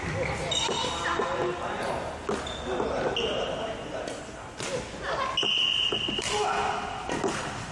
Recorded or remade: recorded